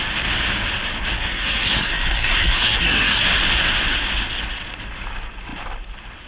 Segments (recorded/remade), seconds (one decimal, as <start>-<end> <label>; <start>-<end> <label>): 0.0-1.2 recorded; 1.2-3.2 remade; 3.2-6.3 recorded